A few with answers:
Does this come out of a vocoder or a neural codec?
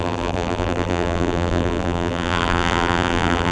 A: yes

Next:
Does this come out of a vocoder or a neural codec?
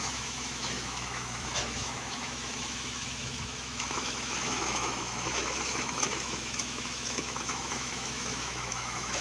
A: yes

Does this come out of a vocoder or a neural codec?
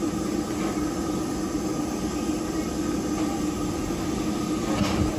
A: no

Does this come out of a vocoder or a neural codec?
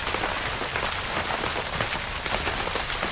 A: no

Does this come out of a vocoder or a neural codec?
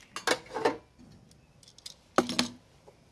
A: no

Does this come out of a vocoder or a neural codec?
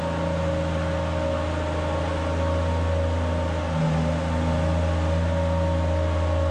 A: no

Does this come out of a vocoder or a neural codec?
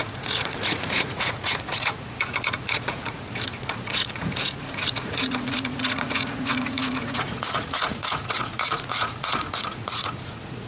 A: yes